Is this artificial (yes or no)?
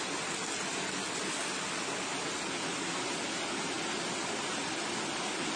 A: no